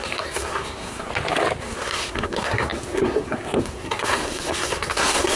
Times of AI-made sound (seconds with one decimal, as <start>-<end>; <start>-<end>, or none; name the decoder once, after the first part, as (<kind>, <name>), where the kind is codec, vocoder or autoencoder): 0.0-1.1 (codec, SNAC); 1.6-5.4